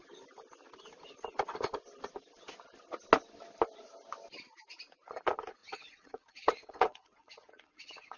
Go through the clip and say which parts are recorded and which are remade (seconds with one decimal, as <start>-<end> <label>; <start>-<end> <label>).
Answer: 0.0-5.6 recorded; 5.6-8.2 remade